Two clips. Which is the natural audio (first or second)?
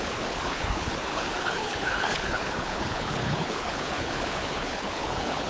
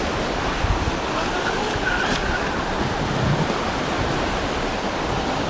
second